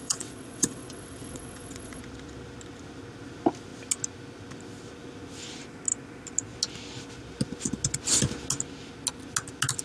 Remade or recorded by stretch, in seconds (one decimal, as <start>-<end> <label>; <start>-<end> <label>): 0.0-2.0 remade; 2.0-9.8 recorded